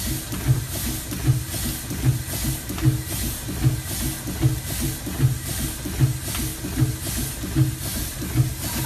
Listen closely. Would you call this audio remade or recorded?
recorded